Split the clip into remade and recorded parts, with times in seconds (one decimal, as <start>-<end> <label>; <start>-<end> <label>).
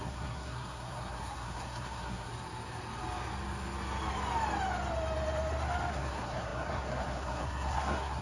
0.0-2.3 remade; 2.3-5.9 recorded; 5.9-8.2 remade